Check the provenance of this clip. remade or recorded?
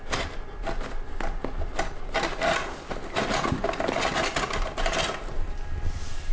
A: recorded